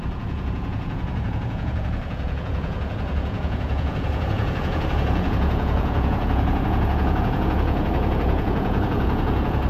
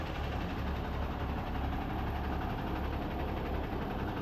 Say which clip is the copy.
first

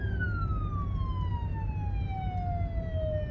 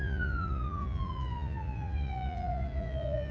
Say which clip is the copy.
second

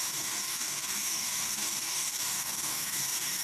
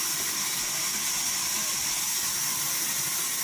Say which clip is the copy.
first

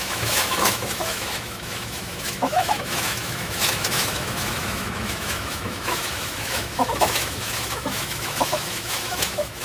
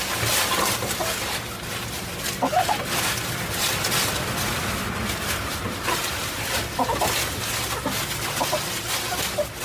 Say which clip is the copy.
first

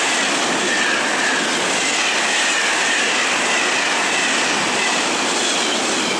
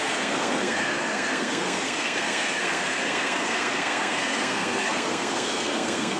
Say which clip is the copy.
second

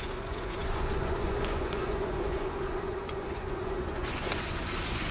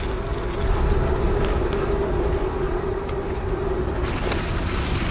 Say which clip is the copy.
first